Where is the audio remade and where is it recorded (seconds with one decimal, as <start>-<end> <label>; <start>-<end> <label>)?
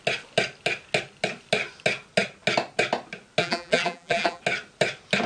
0.0-3.4 recorded; 3.4-4.4 remade; 4.4-5.3 recorded